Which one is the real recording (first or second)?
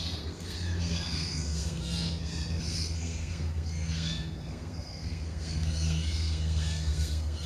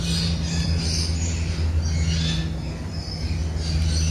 second